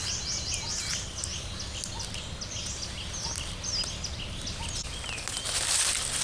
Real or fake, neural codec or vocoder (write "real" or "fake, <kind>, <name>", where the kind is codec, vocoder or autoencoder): real